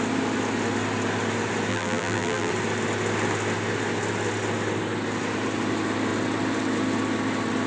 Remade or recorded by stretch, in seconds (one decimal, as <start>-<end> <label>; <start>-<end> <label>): 0.0-1.7 recorded; 1.7-2.5 remade; 2.5-7.7 recorded